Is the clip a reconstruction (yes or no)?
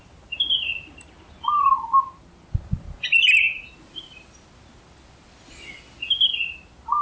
no